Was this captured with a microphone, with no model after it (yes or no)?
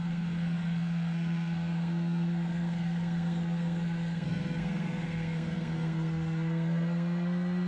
no